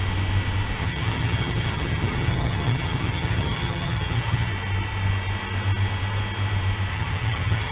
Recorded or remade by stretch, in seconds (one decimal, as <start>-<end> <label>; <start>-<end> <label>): 0.0-0.8 recorded; 0.8-4.5 remade; 4.5-6.9 recorded; 6.9-7.7 remade